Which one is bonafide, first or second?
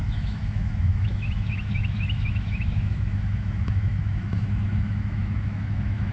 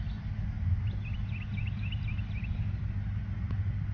second